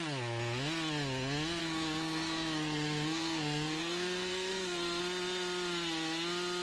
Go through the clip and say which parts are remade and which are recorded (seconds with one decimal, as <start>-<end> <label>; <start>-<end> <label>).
0.0-1.6 recorded; 1.6-5.0 remade; 5.0-6.6 recorded

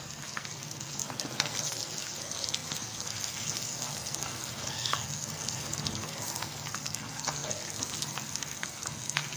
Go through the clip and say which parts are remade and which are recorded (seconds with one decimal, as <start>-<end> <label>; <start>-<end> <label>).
0.0-9.4 remade

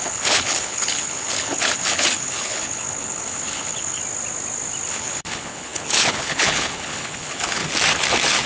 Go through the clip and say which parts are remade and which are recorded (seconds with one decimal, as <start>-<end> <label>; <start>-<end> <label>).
0.0-4.0 remade; 4.0-4.9 recorded; 4.9-7.6 remade; 7.6-8.5 recorded

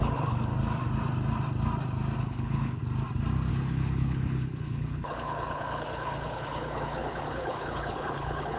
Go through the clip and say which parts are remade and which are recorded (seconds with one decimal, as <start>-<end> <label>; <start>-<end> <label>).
0.0-0.5 remade; 0.5-2.2 recorded; 2.2-2.8 remade; 2.8-3.5 recorded; 3.5-8.6 remade

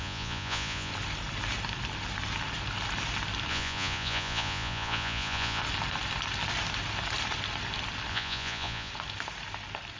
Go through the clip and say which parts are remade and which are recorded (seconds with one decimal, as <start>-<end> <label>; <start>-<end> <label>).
0.0-0.9 remade; 0.9-3.5 recorded; 3.5-5.6 remade; 5.6-8.1 recorded; 8.1-8.9 remade; 8.9-10.0 recorded

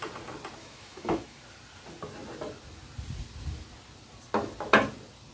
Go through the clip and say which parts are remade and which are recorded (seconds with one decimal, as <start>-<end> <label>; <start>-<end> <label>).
0.0-0.6 recorded; 0.6-1.4 remade; 1.4-5.3 recorded

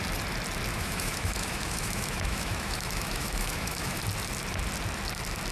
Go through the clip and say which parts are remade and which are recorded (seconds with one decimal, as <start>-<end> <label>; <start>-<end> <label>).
0.0-0.7 recorded; 0.7-4.0 remade; 4.0-5.5 recorded

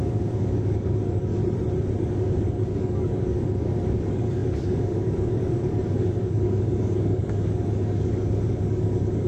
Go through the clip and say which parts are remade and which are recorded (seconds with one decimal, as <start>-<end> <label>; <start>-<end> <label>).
0.0-1.4 remade; 1.4-2.0 recorded; 2.0-9.3 remade